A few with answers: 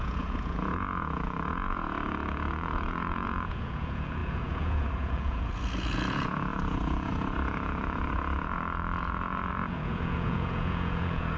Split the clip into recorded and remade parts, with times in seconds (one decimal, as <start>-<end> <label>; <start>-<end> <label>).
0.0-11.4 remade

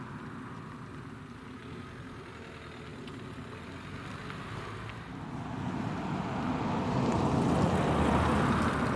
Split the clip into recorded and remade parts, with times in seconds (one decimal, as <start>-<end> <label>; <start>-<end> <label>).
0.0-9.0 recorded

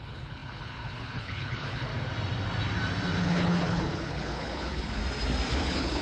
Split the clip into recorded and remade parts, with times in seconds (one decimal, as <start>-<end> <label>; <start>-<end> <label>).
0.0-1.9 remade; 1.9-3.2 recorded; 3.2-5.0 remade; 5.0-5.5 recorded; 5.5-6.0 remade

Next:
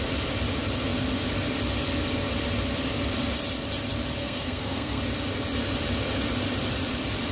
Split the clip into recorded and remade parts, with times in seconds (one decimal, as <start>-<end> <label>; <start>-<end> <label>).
0.0-4.2 recorded; 4.2-5.0 remade; 5.0-7.3 recorded